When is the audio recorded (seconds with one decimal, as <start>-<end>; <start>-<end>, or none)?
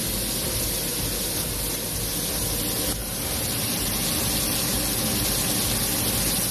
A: 0.0-3.0; 5.0-6.5